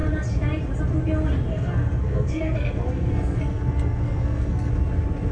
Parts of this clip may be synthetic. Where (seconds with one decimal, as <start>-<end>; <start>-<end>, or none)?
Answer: 1.5-4.7